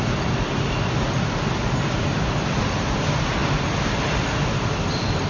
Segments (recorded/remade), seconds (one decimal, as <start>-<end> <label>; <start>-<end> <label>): 0.0-5.3 recorded

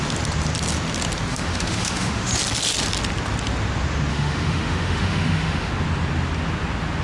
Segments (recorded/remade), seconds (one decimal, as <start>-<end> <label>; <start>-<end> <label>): 0.0-1.3 recorded; 1.3-2.3 remade; 2.3-4.1 recorded; 4.1-5.7 remade; 5.7-7.0 recorded